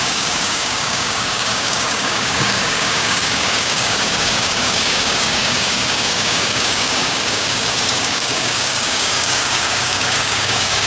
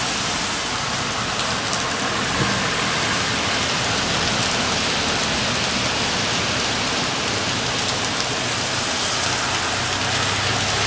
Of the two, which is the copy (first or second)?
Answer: first